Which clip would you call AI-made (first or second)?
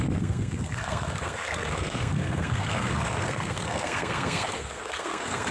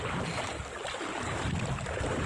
first